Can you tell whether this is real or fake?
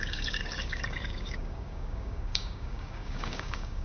fake